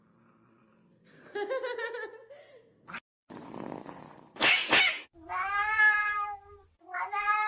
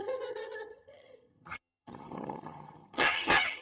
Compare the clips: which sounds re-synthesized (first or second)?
second